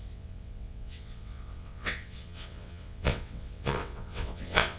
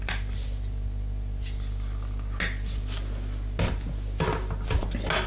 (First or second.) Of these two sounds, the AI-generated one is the first